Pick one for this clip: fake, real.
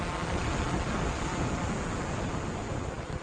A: real